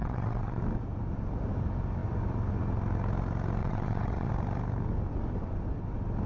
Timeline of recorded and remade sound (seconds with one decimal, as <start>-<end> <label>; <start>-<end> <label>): 0.0-0.6 remade; 0.6-3.6 recorded; 3.6-4.3 remade; 4.3-6.3 recorded